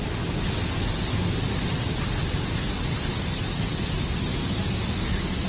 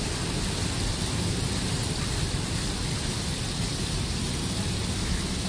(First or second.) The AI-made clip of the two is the second